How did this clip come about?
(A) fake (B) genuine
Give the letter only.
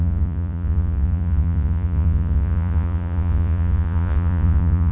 A